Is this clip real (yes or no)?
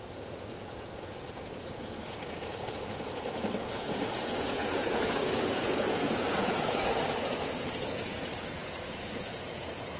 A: no